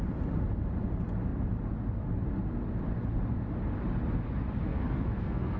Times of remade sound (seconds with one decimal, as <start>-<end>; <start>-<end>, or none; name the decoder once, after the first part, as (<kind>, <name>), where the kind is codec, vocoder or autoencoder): 4.7-5.6 (codec, SNAC)